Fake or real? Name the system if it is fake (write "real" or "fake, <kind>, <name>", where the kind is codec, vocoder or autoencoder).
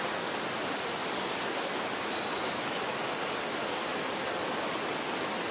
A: real